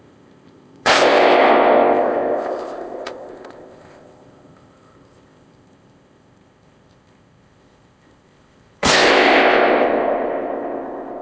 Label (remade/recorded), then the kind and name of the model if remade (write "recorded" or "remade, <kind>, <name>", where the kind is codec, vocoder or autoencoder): remade, codec, ZipCodec